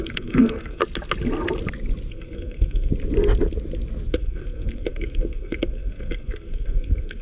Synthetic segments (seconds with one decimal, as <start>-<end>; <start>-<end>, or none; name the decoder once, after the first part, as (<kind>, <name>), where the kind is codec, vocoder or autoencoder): 0.0-0.8 (codec, SNAC); 2.1-2.9; 4.1-7.2